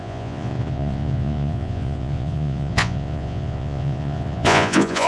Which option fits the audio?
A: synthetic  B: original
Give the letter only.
A